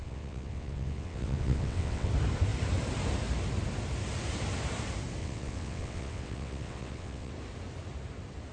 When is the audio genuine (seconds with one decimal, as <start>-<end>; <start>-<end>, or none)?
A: 2.1-5.2; 7.3-8.5